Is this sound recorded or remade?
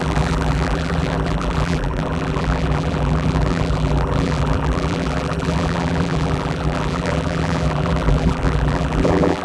remade